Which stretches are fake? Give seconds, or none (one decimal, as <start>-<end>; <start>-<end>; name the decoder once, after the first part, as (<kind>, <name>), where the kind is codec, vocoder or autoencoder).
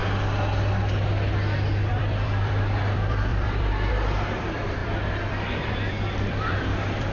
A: 1.9-7.1 (vocoder, BigVGAN v2)